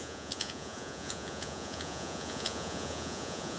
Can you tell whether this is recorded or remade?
remade